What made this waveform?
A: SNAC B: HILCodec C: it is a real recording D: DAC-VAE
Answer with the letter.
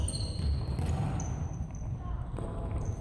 C